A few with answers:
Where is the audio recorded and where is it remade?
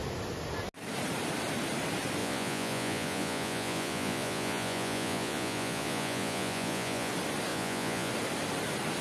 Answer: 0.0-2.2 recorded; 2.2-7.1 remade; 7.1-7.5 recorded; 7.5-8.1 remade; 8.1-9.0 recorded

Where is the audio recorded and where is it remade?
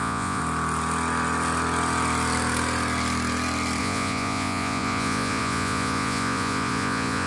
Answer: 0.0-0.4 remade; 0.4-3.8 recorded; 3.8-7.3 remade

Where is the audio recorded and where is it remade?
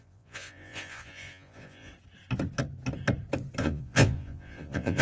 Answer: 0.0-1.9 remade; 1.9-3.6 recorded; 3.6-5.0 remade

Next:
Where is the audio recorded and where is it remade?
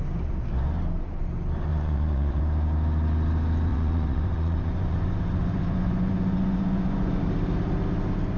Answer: 0.0-1.7 recorded; 1.7-2.4 remade; 2.4-3.7 recorded; 3.7-7.2 remade; 7.2-8.4 recorded